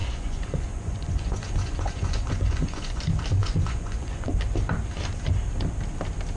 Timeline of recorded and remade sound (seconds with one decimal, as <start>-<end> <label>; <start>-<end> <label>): 0.0-3.0 remade; 3.0-3.4 recorded; 3.4-4.3 remade; 4.3-6.4 recorded